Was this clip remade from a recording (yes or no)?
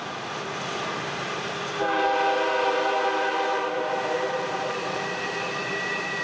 yes